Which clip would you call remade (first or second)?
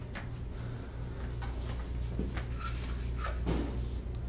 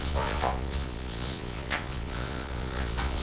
second